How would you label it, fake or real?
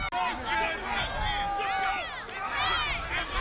real